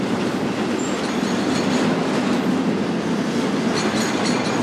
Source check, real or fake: real